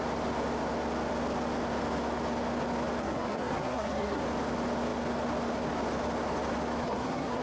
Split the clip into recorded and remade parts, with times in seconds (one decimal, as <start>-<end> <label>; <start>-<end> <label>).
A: 0.0-3.0 recorded; 3.0-4.2 remade; 4.2-6.8 recorded; 6.8-7.4 remade